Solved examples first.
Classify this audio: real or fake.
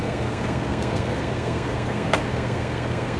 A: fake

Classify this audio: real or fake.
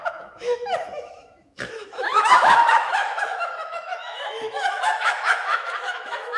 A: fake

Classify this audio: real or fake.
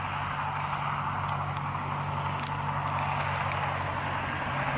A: real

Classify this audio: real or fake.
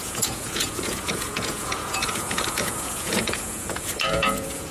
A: fake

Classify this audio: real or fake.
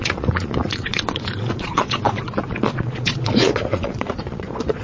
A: fake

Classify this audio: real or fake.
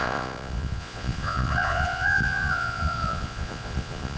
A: fake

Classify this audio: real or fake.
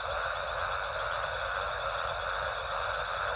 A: real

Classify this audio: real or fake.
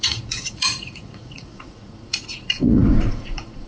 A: fake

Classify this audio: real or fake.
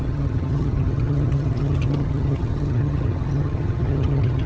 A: fake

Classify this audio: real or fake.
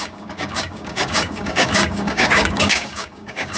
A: fake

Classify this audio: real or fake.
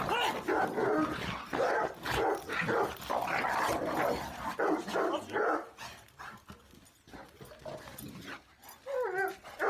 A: real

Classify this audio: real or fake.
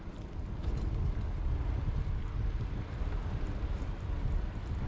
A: real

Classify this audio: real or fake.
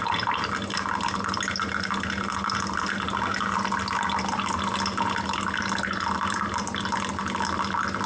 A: real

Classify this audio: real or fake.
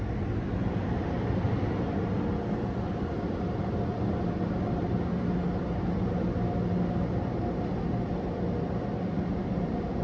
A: real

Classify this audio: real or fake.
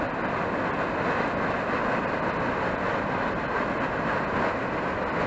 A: real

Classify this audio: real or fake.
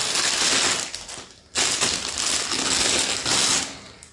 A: real